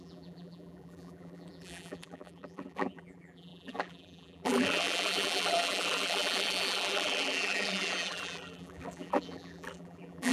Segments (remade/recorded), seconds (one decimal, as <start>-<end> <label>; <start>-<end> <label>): 0.0-10.3 remade